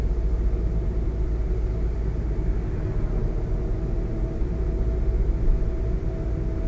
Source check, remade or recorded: recorded